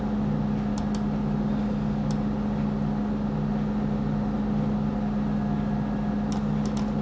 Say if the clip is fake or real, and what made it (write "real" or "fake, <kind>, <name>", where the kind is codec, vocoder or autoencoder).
real